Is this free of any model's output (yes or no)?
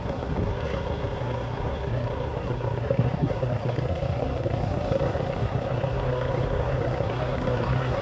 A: no